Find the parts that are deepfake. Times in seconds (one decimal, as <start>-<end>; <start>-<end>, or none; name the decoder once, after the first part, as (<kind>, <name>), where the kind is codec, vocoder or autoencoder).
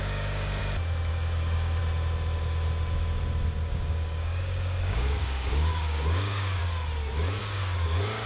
0.0-0.6 (codec, DAC); 1.1-1.8; 3.7-6.6; 7.4-8.3